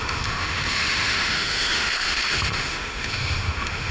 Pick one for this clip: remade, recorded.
remade